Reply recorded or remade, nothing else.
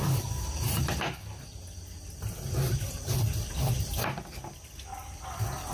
recorded